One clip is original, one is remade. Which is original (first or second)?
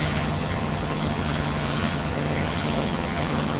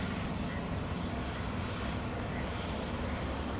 second